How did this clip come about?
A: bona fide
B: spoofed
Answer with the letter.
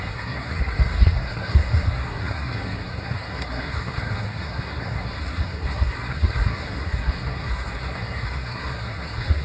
B